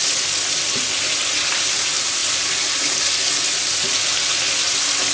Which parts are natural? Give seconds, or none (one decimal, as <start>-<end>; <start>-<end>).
0.0-1.7; 2.2-3.4